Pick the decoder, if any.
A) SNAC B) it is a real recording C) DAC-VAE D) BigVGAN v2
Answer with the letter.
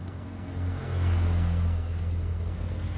A